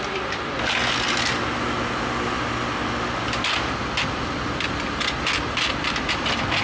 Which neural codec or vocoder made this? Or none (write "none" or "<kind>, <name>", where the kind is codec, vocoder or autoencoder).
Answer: none